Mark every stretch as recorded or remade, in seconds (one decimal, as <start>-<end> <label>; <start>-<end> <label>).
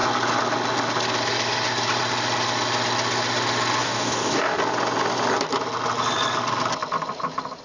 0.0-3.8 recorded; 3.8-4.6 remade; 4.6-7.6 recorded